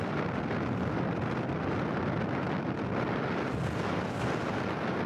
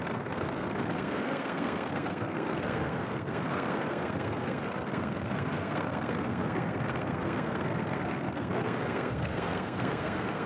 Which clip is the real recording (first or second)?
first